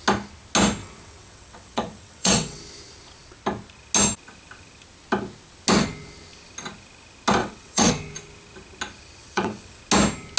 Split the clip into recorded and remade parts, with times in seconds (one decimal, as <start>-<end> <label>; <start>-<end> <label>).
0.0-0.8 recorded; 0.8-2.6 remade; 2.6-7.4 recorded; 7.4-7.9 remade; 7.9-9.2 recorded; 9.2-9.8 remade; 9.8-10.4 recorded